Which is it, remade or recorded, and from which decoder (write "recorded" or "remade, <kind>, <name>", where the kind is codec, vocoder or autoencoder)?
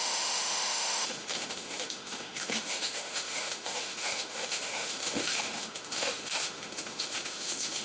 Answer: remade, autoencoder, DAC-VAE